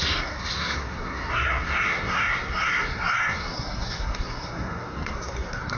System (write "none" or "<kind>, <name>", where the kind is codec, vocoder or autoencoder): codec, SNAC